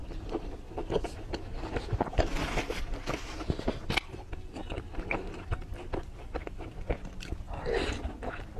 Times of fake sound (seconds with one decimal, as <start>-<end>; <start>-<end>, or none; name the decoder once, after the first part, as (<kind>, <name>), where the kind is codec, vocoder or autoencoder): none